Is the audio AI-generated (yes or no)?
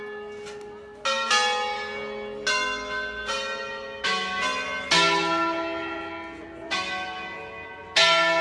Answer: no